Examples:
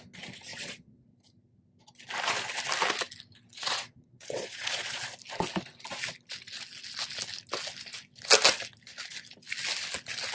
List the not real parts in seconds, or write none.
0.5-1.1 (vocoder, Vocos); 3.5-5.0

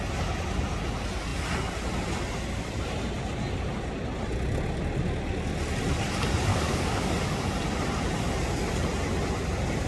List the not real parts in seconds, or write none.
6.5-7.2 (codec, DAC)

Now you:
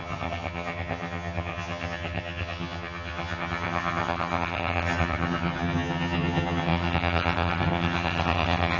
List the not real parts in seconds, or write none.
0.0-8.8 (vocoder, HiFi-GAN)

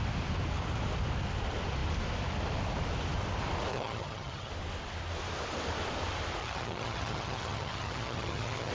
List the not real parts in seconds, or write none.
3.7-4.5 (vocoder, HiFi-GAN); 6.4-8.7

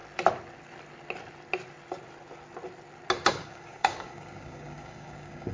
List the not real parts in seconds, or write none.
3.3-5.5 (codec, DAC)

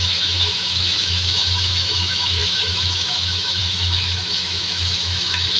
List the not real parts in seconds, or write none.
0.0-5.6 (autoencoder, DAC-VAE)